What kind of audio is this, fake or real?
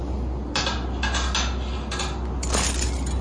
real